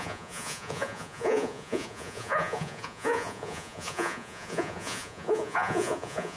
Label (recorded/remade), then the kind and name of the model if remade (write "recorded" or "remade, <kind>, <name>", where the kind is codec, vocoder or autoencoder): remade, vocoder, Vocos